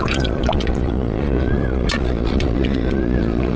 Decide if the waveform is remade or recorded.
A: remade